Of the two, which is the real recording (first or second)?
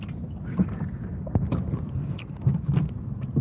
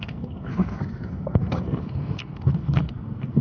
first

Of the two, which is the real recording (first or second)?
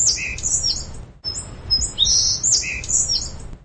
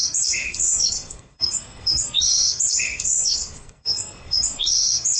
first